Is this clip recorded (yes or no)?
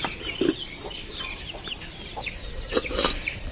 yes